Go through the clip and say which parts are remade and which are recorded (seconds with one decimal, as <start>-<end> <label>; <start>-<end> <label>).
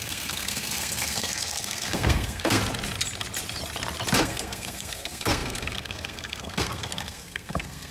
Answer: 0.0-2.6 remade; 2.6-4.2 recorded; 4.2-7.9 remade